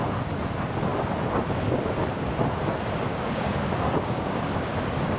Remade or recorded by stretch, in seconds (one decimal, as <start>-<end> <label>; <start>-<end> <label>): 0.0-3.1 recorded; 3.1-4.7 remade; 4.7-5.2 recorded